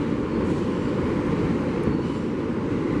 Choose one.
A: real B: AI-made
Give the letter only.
A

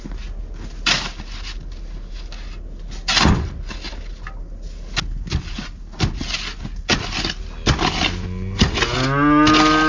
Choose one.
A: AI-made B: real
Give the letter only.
B